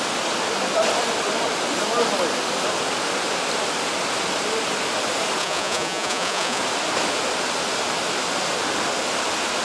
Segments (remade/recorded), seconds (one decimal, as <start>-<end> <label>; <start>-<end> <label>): 0.0-5.4 recorded; 5.4-6.6 remade; 6.6-9.6 recorded